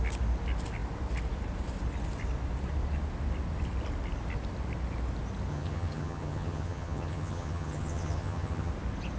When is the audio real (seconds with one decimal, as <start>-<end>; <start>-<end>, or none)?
0.0-5.5; 8.7-9.2